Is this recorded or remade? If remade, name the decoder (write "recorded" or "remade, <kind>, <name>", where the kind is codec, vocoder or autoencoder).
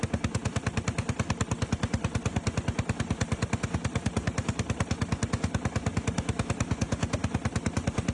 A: recorded